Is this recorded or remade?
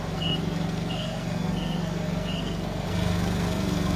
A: remade